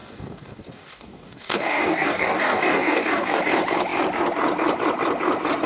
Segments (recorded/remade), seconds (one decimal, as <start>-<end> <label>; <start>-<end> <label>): 0.0-3.4 remade; 3.4-5.7 recorded

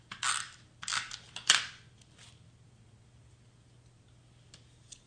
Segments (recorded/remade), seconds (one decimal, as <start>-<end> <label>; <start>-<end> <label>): 0.0-5.1 recorded

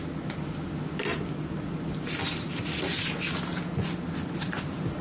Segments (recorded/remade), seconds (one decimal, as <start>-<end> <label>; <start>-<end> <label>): 0.0-5.0 recorded

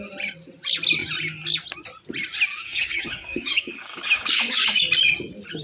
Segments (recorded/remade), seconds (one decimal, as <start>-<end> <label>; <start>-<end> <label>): 0.0-2.5 recorded; 2.5-4.8 remade; 4.8-5.6 recorded

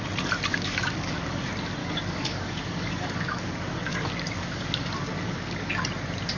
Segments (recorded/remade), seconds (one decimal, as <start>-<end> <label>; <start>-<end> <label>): 0.0-0.5 recorded; 0.5-1.4 remade; 1.4-1.8 recorded; 1.8-5.6 remade; 5.6-6.4 recorded

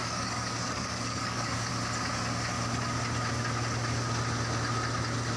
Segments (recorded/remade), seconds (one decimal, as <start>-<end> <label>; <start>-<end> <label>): 0.0-1.7 remade; 1.7-5.4 recorded

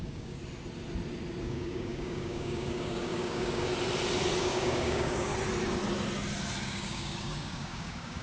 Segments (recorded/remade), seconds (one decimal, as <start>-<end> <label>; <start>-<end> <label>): 0.0-0.4 remade; 0.4-1.4 recorded; 1.4-3.7 remade; 3.7-4.4 recorded; 4.4-5.3 remade; 5.3-6.6 recorded; 6.6-8.2 remade